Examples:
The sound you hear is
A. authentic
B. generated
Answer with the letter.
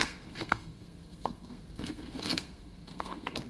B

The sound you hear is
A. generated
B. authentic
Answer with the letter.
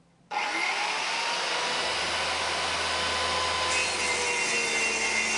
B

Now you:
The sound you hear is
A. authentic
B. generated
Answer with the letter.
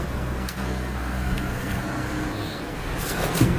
B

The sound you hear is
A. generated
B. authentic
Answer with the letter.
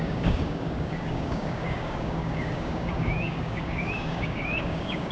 A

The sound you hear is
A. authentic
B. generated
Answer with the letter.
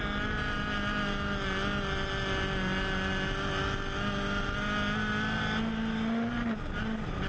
A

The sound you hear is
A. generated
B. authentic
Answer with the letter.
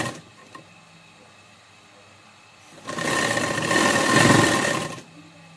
B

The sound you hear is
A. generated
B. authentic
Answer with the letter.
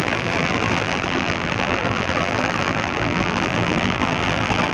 A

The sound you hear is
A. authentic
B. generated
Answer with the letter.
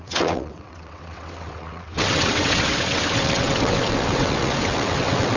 B